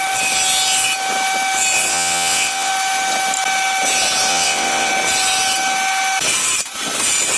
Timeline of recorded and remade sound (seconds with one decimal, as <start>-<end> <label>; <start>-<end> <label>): 0.0-1.9 recorded; 1.9-2.7 remade; 2.7-4.3 recorded; 4.3-4.9 remade; 4.9-7.4 recorded